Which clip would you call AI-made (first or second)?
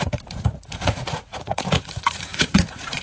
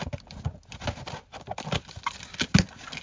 first